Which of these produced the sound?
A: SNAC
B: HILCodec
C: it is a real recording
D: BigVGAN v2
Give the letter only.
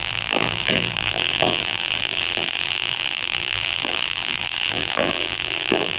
D